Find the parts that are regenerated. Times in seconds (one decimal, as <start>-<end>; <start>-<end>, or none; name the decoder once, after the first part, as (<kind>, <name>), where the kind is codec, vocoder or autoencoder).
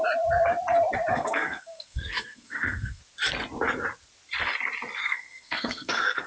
1.1-3.0 (codec, SNAC); 5.0-6.3